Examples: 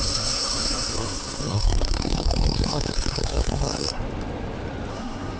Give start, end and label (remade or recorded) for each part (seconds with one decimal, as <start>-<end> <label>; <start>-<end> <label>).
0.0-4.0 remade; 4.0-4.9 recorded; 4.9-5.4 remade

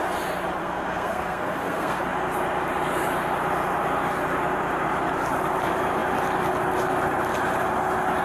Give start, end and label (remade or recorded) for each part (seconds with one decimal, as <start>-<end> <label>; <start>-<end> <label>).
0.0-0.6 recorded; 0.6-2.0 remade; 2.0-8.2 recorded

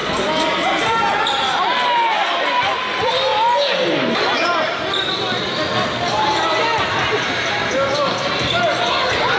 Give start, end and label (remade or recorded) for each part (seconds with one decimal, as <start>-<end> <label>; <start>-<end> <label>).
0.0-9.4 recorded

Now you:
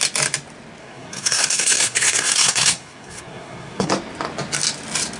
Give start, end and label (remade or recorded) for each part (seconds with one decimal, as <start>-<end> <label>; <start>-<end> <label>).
0.0-0.8 recorded; 0.8-3.9 remade; 3.9-5.2 recorded

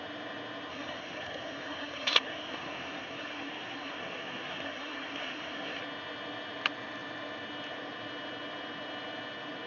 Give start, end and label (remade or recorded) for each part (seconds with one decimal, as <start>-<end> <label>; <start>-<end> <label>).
0.0-0.7 recorded; 0.7-5.8 remade; 5.8-9.7 recorded

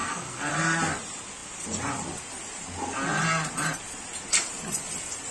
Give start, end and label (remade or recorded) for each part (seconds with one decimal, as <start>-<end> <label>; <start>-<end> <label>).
0.0-0.5 remade; 0.5-5.3 recorded